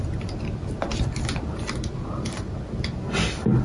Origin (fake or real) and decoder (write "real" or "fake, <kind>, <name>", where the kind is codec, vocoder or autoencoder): real